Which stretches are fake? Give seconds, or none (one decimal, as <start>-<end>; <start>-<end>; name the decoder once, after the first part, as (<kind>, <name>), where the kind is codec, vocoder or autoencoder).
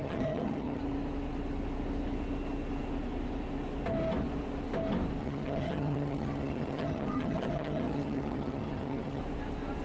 0.0-0.8 (vocoder, HiFi-GAN); 5.2-9.2